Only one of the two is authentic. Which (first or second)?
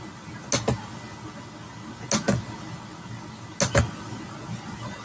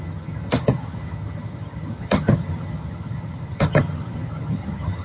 first